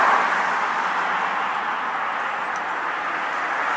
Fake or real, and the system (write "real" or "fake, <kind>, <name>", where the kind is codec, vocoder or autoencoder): real